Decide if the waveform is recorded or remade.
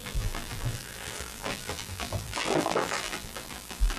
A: remade